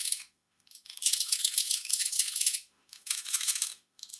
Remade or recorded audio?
remade